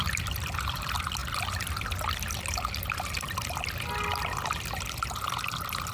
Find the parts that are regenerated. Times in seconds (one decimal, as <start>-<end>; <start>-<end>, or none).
none